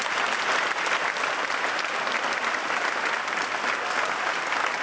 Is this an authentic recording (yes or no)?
yes